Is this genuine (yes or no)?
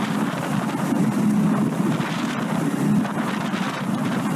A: yes